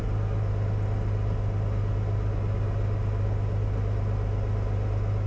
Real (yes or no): yes